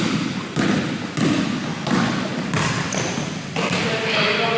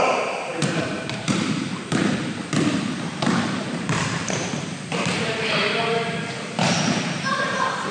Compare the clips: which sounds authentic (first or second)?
first